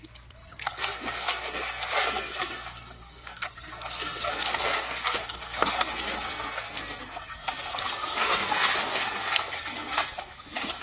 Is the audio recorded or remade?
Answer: remade